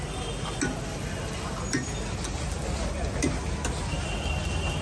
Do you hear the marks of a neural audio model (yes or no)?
no